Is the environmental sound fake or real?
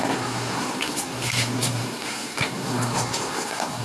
fake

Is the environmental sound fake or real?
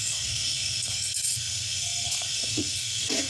fake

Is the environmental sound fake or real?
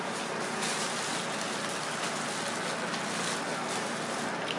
real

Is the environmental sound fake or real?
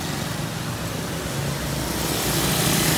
real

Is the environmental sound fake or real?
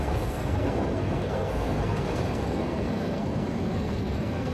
fake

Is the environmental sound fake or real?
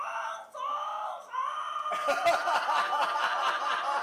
real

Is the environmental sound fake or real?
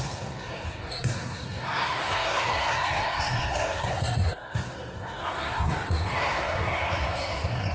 fake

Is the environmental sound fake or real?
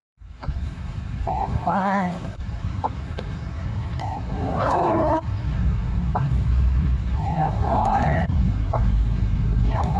fake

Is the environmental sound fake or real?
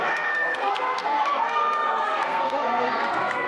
fake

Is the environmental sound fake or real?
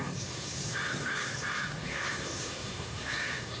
fake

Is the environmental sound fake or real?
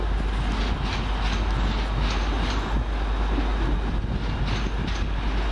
real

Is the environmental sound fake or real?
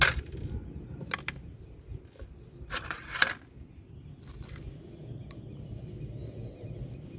real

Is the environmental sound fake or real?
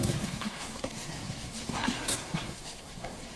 fake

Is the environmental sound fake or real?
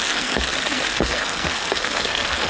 fake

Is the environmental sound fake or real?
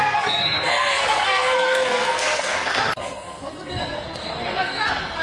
fake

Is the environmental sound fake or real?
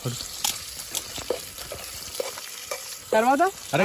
real